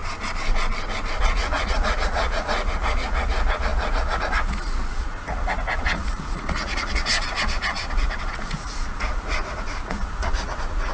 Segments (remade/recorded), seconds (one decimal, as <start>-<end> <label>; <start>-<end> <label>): 0.0-1.2 recorded; 1.2-10.9 remade